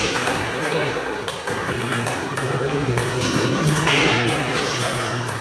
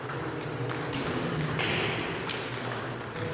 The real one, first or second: second